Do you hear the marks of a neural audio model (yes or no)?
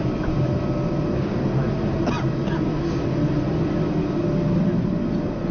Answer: no